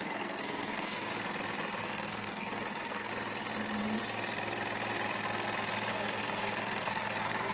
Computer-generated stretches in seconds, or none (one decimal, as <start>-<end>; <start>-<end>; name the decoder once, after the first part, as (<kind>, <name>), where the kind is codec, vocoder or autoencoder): 0.0-1.1 (codec, SNAC); 1.8-3.1; 5.9-7.5